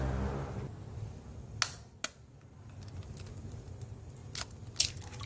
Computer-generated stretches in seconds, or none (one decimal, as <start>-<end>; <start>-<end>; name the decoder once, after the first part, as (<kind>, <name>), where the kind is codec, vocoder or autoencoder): none